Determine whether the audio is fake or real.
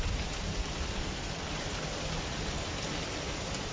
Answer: real